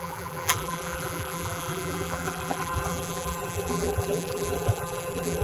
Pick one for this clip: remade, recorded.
remade